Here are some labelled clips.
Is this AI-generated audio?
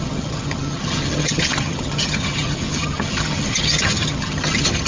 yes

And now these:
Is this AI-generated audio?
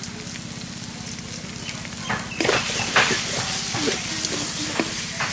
no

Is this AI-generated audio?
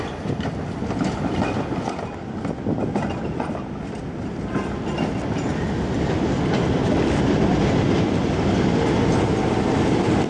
no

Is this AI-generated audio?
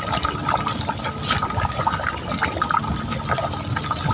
no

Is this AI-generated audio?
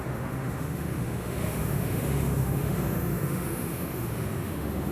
yes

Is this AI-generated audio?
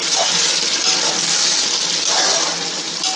no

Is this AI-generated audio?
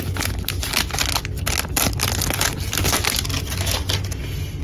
no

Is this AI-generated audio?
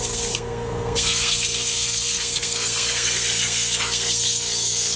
yes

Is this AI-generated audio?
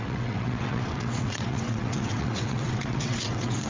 yes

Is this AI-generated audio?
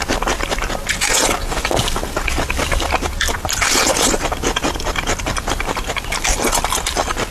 no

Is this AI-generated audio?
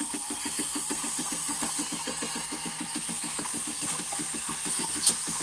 yes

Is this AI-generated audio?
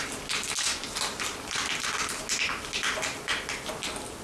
no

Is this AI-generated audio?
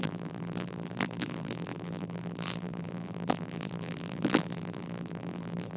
yes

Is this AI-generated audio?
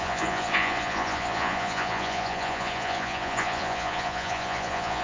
yes